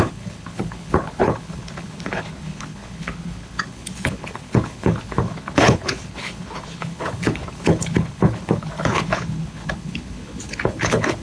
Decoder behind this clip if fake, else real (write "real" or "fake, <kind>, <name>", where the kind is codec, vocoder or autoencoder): fake, codec, HILCodec